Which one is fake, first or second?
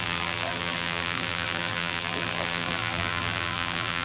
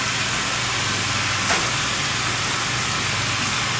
first